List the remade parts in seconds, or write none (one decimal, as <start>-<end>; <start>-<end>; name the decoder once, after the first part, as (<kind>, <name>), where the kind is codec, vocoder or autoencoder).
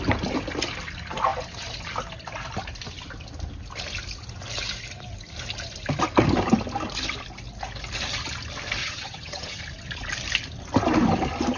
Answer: 8.8-9.6 (vocoder, HiFi-GAN)